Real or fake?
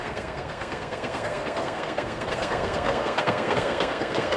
fake